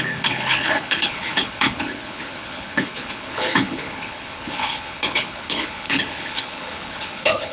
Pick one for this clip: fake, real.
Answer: fake